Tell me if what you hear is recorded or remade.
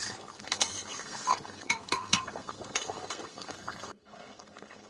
remade